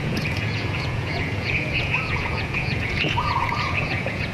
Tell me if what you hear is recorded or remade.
remade